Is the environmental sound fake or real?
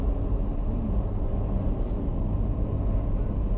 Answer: real